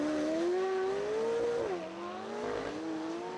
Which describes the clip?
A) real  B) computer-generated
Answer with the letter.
A